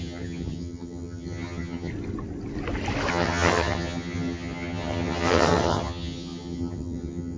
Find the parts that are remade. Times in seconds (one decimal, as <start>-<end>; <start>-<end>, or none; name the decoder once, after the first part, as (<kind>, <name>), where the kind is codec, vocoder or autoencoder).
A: 0.0-1.9 (vocoder, HiFi-GAN); 3.1-7.4